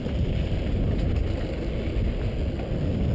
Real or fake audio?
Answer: real